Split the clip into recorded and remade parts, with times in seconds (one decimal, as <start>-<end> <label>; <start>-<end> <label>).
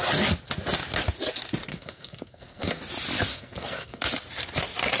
0.0-1.7 recorded; 1.7-2.8 remade; 2.8-3.3 recorded; 3.3-4.0 remade; 4.0-5.0 recorded